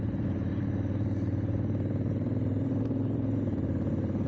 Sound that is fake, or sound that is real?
fake